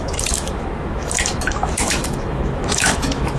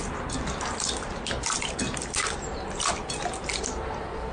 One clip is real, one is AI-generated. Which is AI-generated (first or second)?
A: first